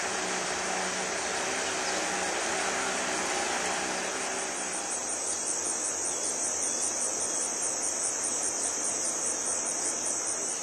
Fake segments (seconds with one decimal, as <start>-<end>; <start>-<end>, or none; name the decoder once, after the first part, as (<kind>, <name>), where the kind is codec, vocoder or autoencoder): none